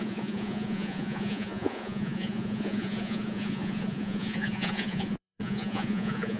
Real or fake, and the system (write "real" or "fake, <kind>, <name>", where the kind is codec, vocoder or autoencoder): fake, vocoder, Vocos